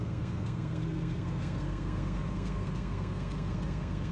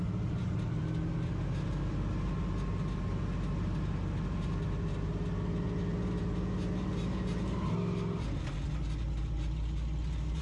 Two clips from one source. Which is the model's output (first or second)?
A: first